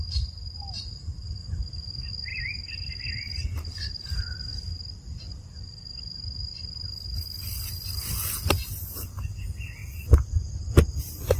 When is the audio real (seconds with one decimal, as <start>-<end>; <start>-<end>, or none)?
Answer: 0.0-1.4; 1.9-2.3; 6.0-11.4